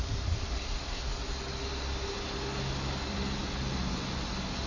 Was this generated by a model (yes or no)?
no